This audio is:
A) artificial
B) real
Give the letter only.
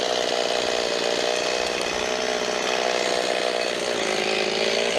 A